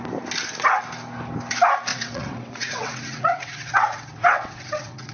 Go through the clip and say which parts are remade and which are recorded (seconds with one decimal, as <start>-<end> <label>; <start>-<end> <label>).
0.0-1.9 recorded; 1.9-5.1 remade